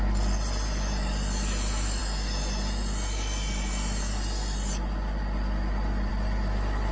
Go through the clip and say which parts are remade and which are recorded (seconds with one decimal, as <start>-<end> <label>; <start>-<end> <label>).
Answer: 0.0-6.9 recorded